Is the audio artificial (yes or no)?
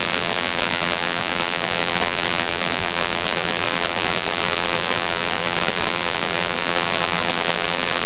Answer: yes